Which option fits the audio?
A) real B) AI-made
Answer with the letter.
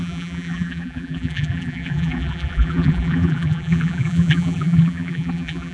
B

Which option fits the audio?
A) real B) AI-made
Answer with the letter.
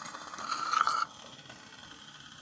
A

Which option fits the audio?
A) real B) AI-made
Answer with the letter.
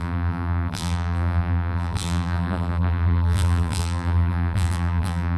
B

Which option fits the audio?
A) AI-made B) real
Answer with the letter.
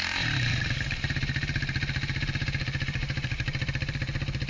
A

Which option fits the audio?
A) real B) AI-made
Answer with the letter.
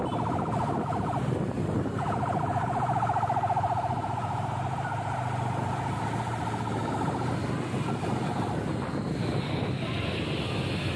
A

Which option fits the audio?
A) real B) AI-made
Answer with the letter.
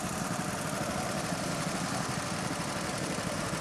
B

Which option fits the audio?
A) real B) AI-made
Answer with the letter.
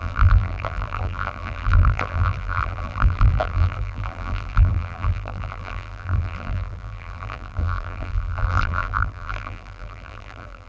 B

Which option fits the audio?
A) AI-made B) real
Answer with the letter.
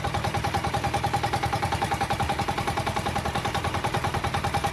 A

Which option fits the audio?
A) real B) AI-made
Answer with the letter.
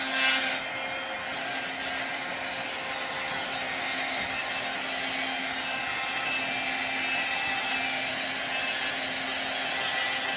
A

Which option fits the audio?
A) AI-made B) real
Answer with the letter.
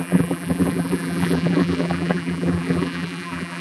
A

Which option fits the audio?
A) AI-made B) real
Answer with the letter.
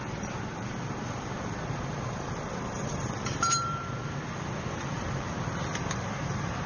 A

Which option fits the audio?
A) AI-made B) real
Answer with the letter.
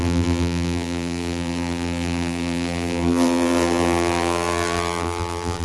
A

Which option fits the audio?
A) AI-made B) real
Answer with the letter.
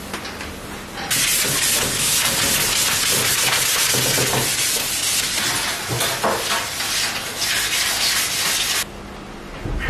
B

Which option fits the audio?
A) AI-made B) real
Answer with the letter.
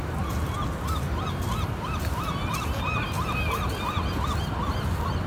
B